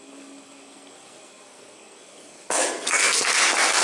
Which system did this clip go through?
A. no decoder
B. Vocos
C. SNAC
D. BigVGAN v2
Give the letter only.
C